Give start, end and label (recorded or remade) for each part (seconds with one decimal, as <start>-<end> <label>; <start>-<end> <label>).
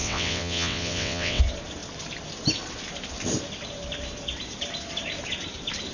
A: 0.0-1.4 remade; 1.4-5.9 recorded